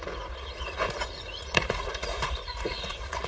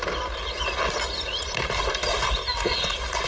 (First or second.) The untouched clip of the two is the second